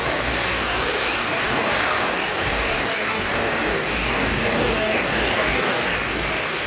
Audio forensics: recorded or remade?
remade